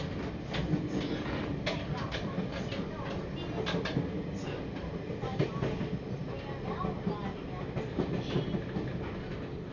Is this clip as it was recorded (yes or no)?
yes